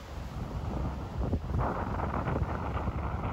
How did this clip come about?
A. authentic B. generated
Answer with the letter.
A